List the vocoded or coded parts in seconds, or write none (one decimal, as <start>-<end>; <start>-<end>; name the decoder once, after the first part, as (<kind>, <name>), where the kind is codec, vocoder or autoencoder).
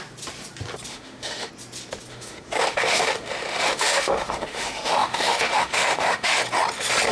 0.9-1.5 (autoencoder, DAC-VAE); 2.1-6.4